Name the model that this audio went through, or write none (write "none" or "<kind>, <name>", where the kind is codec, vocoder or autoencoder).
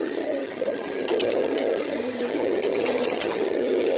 vocoder, HiFi-GAN